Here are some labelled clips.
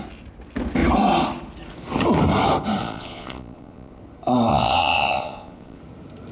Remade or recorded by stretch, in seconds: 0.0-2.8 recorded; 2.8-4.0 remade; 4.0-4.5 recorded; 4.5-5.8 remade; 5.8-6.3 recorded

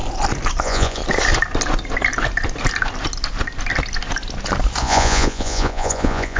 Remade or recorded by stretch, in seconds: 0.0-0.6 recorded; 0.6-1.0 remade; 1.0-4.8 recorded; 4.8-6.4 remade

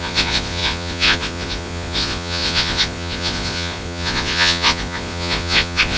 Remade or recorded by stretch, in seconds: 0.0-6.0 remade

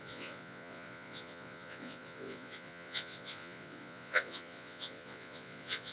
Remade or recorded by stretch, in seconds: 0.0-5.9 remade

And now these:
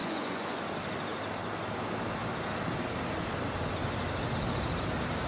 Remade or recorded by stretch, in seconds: 0.0-0.6 remade; 0.6-5.3 recorded

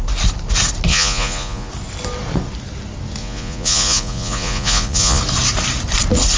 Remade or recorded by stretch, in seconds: 0.0-0.9 recorded; 0.9-1.7 remade; 1.7-3.2 recorded; 3.2-5.2 remade; 5.2-6.4 recorded

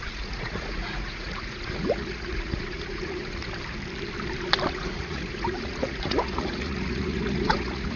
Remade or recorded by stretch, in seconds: 0.0-3.4 remade; 3.4-4.7 recorded; 4.7-8.0 remade